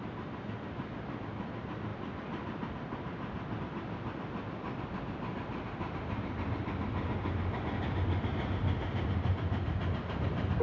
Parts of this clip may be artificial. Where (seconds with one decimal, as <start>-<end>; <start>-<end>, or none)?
none

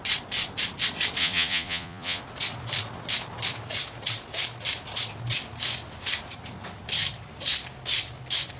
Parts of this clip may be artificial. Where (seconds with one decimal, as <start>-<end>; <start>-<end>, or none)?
1.2-2.2

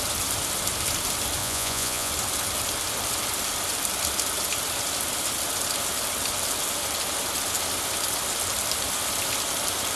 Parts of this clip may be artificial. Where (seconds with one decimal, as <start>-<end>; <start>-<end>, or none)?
1.4-2.1

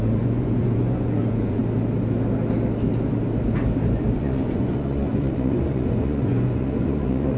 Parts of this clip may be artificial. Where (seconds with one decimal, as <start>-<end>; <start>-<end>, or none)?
0.0-1.6; 4.2-7.4